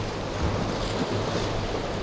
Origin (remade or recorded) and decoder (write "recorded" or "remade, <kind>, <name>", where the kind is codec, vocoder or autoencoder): recorded